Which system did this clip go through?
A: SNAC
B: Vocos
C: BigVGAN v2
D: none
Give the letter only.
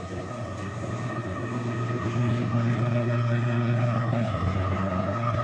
A